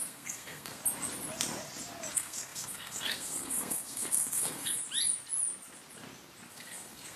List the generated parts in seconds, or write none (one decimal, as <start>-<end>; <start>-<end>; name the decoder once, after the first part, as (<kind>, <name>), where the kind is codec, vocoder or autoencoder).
0.0-0.8 (codec, SNAC); 2.1-4.8; 6.5-7.2